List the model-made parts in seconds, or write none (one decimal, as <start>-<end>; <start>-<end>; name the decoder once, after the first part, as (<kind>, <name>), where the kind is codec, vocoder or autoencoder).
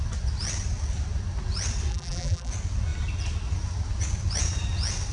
1.9-2.5 (vocoder, BigVGAN v2)